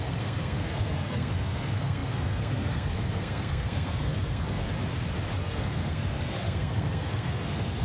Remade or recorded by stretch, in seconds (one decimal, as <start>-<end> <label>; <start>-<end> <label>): 0.0-4.6 remade; 4.6-5.4 recorded; 5.4-7.8 remade